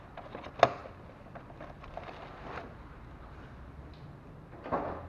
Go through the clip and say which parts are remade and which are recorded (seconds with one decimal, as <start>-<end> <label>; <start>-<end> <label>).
0.0-5.1 recorded